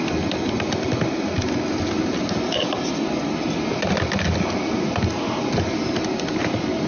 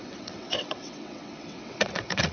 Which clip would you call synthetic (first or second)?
second